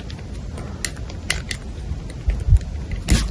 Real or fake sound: real